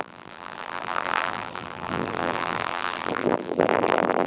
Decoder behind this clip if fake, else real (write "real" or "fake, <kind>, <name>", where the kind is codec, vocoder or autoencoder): fake, vocoder, BigVGAN v2